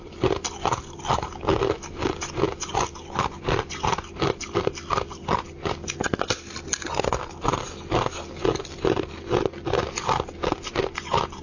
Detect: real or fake real